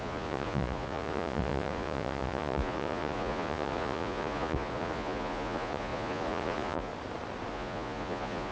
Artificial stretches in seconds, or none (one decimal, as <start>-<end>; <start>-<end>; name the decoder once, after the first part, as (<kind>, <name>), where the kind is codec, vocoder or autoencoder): 0.0-6.9 (vocoder, Vocos); 7.5-8.5